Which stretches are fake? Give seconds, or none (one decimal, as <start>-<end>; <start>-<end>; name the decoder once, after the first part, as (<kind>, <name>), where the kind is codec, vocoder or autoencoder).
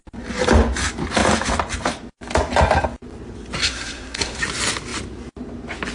3.6-4.4 (codec, SNAC)